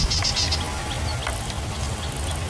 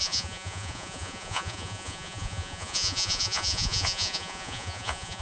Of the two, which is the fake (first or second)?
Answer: second